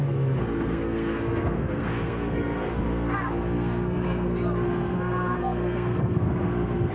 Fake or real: fake